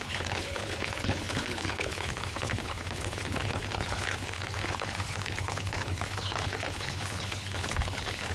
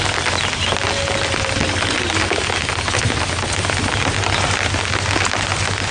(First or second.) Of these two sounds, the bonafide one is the second